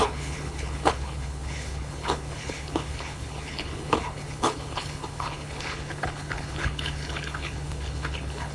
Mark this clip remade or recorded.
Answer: remade